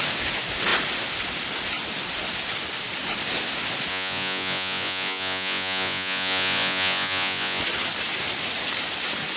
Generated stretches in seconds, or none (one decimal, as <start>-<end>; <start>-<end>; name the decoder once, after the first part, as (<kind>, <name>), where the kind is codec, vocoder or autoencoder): 3.9-7.6 (vocoder, Vocos)